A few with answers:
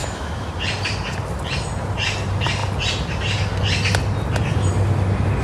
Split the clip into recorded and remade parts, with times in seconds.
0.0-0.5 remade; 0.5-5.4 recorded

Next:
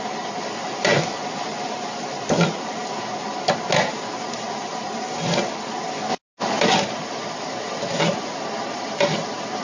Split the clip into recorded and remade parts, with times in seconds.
0.0-2.8 remade; 2.8-4.2 recorded; 4.2-6.1 remade; 6.1-6.6 recorded; 6.6-9.6 remade

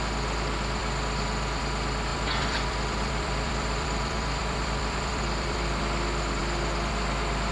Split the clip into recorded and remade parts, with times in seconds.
0.0-2.1 recorded; 2.1-5.8 remade; 5.8-7.5 recorded